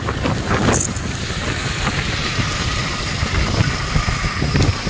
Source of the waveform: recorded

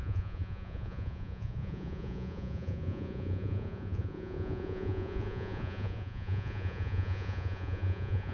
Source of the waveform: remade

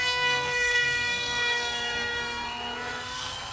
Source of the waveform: remade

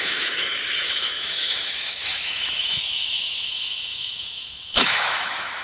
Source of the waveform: remade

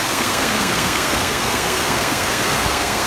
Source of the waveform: remade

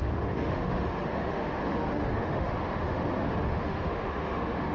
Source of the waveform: remade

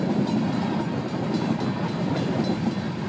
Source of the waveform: recorded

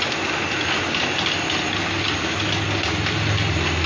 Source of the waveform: recorded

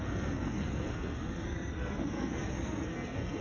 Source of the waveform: remade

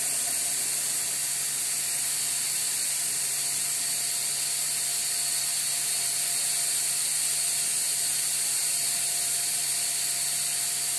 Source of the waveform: recorded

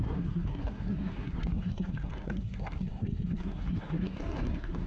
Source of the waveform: remade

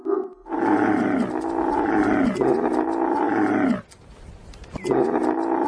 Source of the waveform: recorded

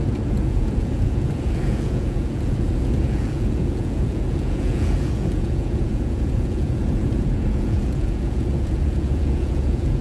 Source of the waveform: remade